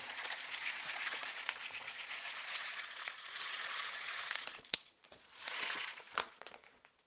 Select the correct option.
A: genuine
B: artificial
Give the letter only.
B